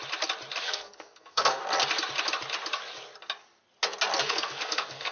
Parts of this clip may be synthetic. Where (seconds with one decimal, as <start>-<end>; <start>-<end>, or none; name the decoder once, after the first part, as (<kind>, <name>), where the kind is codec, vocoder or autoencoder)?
0.6-1.6 (codec, SNAC); 4.2-5.1